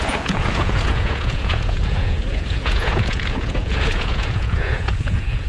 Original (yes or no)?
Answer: no